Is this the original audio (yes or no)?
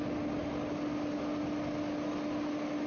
yes